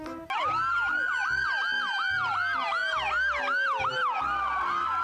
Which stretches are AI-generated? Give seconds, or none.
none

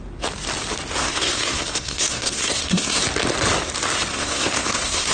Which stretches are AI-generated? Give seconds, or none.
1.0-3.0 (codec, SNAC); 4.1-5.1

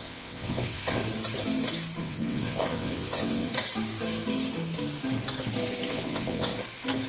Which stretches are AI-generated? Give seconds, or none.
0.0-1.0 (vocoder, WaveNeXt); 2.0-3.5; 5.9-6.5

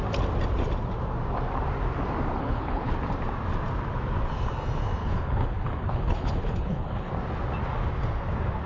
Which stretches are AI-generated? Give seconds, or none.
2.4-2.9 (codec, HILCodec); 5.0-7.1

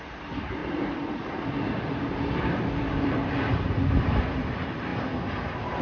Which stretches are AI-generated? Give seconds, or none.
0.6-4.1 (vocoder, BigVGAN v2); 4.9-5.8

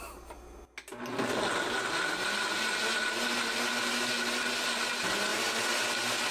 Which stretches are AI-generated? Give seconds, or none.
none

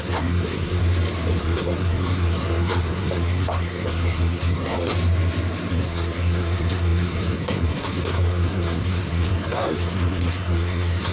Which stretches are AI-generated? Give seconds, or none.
0.0-0.8 (codec, SNAC); 1.4-4.9; 5.7-11.1

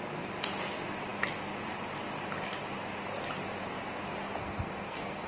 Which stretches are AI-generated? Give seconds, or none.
4.4-5.3 (codec, SNAC)